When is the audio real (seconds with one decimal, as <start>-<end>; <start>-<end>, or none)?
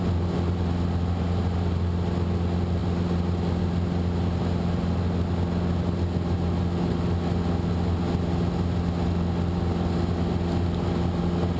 0.0-11.6